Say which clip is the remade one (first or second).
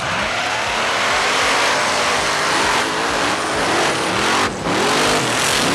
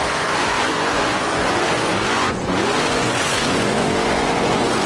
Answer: second